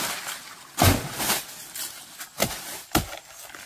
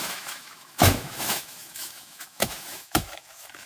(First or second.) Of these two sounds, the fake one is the second